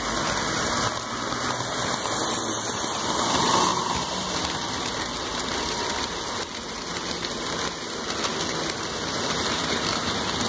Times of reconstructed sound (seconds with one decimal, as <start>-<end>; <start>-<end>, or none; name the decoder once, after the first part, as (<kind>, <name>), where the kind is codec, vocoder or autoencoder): 3.7-5.9 (vocoder, BigVGAN v2)